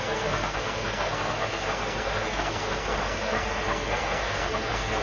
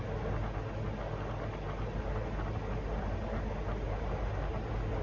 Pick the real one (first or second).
second